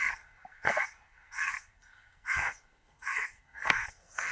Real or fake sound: fake